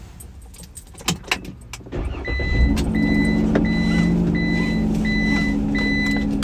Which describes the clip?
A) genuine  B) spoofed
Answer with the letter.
A